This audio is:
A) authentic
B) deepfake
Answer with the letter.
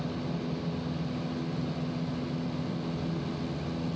A